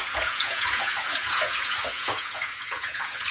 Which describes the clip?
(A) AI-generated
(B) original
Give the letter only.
A